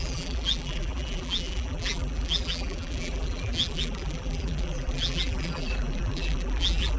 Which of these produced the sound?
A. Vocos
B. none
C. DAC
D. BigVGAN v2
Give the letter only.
D